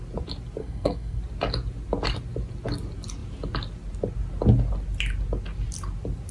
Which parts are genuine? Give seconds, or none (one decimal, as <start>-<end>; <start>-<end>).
0.0-0.6; 1.2-6.3